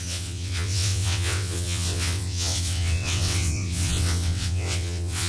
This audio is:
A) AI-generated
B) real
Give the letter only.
A